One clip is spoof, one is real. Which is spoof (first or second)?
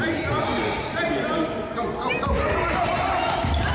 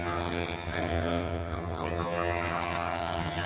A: second